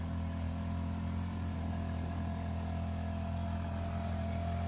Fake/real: real